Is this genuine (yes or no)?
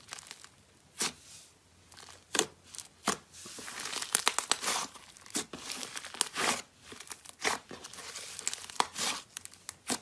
yes